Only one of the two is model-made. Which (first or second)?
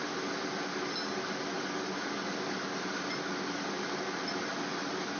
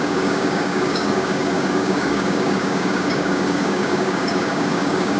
second